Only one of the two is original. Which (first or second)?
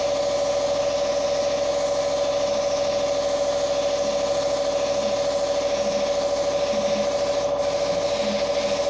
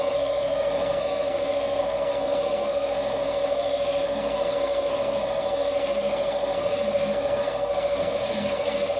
first